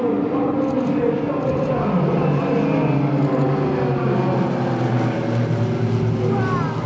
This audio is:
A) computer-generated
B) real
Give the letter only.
B